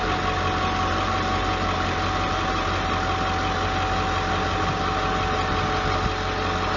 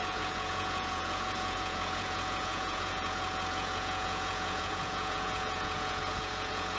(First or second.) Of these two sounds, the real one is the first